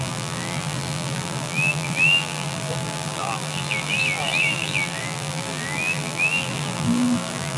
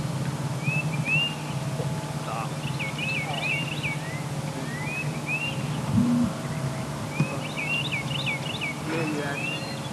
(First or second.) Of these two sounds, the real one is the second